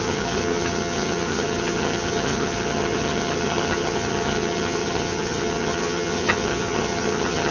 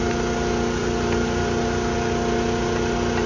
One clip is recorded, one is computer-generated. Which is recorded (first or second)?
second